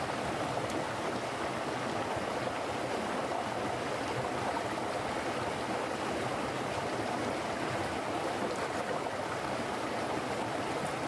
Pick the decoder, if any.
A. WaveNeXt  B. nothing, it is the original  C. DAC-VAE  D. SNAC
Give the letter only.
B